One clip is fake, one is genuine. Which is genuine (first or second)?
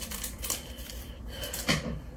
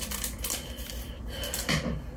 second